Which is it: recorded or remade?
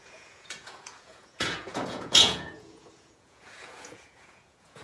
remade